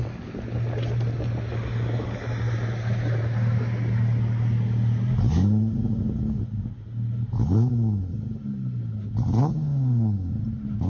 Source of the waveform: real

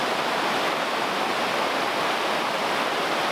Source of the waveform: real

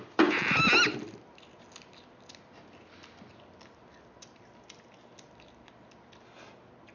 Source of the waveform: real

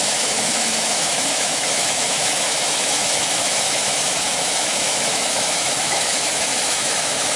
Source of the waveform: fake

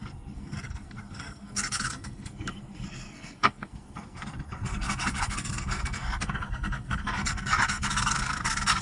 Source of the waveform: fake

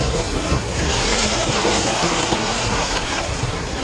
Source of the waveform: fake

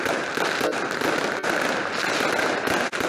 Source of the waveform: real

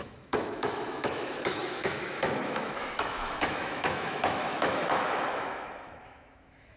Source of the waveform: fake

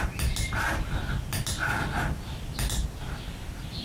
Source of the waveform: real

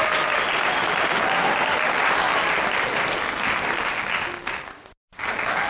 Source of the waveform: real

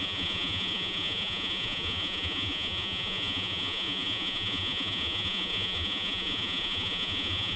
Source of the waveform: fake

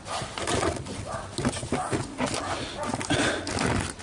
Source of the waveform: real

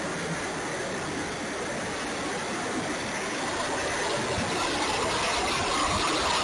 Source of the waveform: real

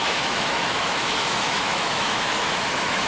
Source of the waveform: fake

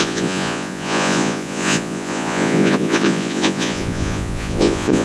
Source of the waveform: fake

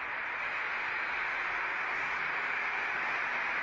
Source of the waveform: real